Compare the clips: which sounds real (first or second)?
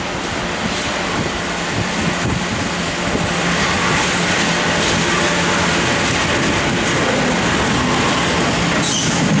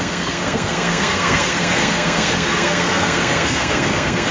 first